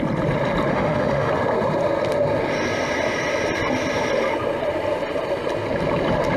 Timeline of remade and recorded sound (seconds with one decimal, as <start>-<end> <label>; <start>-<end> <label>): 0.0-0.7 recorded; 0.7-1.3 remade; 1.3-6.4 recorded